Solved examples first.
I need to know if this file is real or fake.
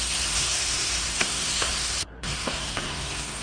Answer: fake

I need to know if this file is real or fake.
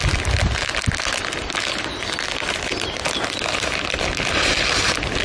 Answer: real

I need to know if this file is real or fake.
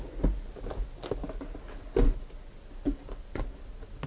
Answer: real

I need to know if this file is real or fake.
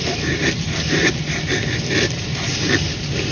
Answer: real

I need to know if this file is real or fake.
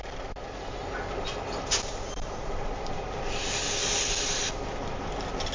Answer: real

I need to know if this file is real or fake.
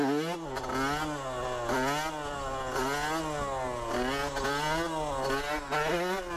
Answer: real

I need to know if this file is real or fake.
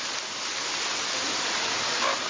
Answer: real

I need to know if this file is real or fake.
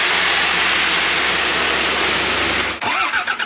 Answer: real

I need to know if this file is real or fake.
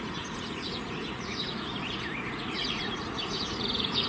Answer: fake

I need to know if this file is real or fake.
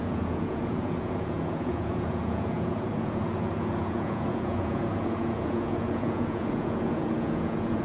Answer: fake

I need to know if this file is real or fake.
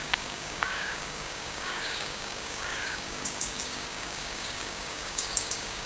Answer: fake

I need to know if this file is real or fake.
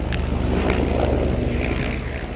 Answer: real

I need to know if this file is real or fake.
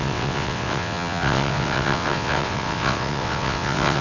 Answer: fake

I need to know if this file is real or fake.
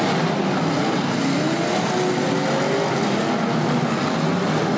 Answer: real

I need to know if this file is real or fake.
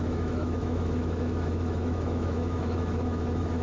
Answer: fake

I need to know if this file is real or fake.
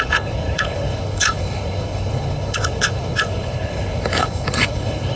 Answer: fake